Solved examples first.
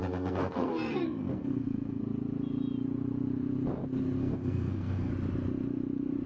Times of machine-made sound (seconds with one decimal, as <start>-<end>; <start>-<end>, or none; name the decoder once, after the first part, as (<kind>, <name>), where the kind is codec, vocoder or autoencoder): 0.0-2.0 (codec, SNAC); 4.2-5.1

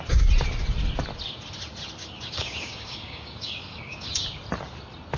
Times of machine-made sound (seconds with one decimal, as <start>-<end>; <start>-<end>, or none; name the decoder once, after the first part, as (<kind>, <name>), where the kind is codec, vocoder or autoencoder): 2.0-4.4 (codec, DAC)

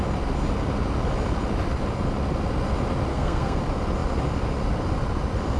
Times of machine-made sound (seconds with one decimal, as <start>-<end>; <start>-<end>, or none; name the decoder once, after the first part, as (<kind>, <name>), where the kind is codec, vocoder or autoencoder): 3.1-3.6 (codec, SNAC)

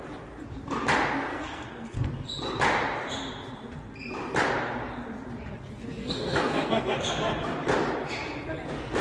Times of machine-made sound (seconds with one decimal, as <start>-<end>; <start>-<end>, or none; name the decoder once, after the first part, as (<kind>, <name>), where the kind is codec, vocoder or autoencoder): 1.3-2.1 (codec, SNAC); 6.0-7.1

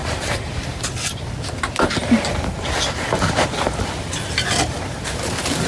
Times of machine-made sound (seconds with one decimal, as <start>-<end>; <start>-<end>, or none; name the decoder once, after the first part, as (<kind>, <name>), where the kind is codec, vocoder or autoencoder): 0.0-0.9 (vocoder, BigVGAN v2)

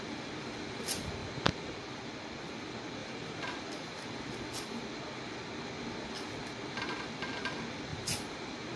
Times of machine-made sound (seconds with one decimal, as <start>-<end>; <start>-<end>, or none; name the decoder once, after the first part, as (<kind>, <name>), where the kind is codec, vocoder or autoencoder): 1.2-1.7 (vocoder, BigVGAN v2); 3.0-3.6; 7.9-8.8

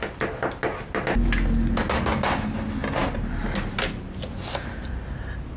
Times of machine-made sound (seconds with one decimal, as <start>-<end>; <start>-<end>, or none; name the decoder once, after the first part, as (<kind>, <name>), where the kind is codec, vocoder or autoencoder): none

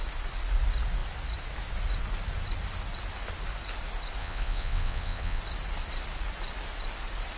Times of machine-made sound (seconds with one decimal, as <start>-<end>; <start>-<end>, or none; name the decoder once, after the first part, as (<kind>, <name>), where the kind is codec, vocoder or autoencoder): 4.2-5.4 (vocoder, WaveNeXt)